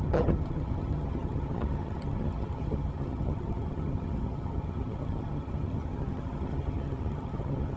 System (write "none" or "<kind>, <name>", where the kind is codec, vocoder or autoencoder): vocoder, HiFi-GAN